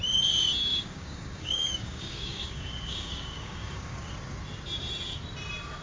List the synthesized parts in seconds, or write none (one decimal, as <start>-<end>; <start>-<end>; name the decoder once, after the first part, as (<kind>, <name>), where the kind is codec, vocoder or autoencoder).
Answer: 0.6-4.1 (codec, DAC)